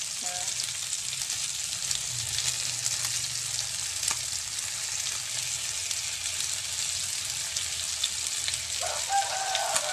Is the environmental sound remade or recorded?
recorded